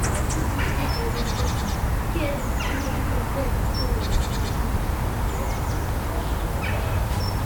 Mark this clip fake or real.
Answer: real